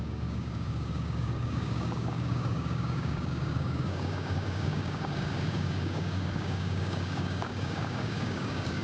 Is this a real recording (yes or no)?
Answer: no